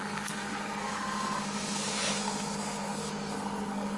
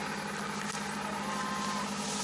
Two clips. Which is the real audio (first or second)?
second